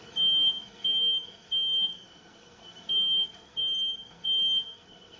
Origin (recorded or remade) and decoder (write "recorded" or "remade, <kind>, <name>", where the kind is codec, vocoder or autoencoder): remade, codec, SNAC